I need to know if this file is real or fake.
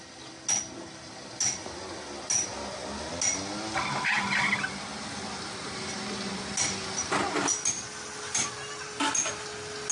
real